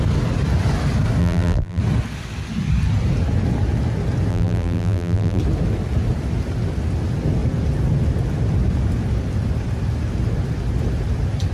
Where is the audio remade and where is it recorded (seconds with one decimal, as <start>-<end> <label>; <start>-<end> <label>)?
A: 0.0-1.2 recorded; 1.2-1.8 remade; 1.8-4.3 recorded; 4.3-5.4 remade; 5.4-11.5 recorded